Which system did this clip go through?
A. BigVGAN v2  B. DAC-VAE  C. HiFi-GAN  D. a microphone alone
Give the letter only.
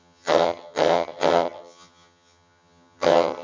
C